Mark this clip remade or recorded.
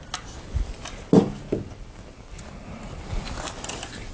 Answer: recorded